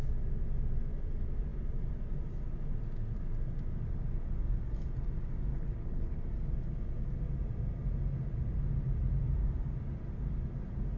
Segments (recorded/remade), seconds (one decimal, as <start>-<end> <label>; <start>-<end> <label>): 0.0-5.5 recorded; 5.5-6.2 remade; 6.2-11.0 recorded